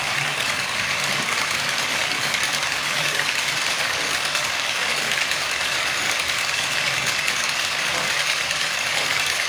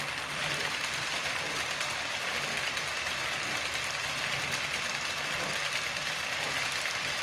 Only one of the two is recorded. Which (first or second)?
second